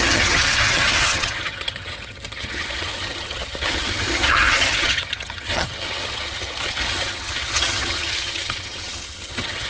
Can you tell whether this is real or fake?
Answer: fake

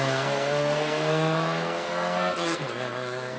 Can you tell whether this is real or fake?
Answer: fake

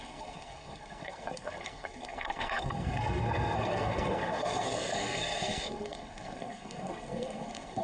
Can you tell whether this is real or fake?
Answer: fake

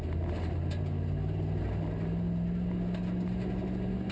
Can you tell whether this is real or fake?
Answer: real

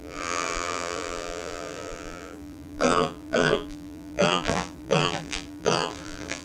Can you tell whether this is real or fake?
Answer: fake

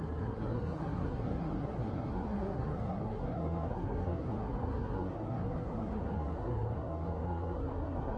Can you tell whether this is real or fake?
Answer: fake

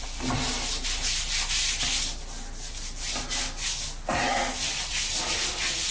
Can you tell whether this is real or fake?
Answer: real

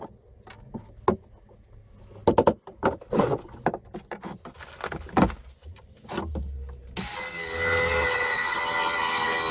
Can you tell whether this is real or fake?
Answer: real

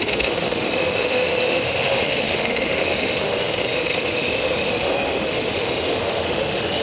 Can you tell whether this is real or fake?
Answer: fake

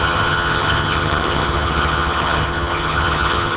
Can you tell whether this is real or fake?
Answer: fake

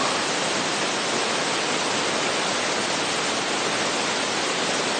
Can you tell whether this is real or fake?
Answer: real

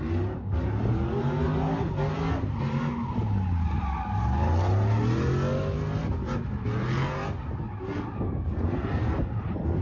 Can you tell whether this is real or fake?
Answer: real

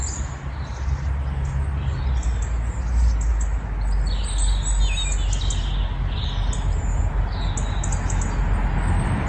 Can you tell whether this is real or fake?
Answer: real